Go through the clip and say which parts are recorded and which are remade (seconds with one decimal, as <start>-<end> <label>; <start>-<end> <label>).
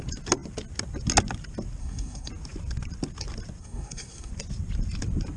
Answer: 0.0-1.8 recorded; 1.8-2.3 remade; 2.3-3.6 recorded; 3.6-4.3 remade; 4.3-5.4 recorded